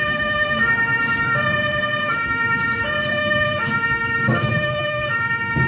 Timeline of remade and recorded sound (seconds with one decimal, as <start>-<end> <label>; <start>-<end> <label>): 0.0-0.9 remade; 0.9-2.0 recorded; 2.0-2.6 remade; 2.6-3.1 recorded; 3.1-5.7 remade